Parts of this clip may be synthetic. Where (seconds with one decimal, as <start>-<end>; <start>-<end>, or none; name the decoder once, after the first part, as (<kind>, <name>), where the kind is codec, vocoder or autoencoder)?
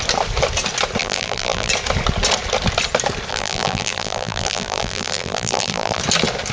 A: 1.0-1.7 (vocoder, BigVGAN v2); 3.3-6.0